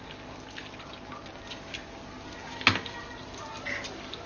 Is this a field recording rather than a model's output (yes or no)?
yes